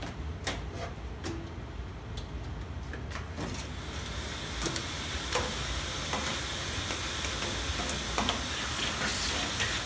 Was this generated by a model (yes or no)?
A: no